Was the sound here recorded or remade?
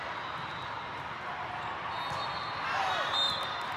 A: recorded